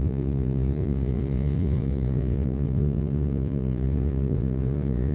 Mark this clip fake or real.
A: fake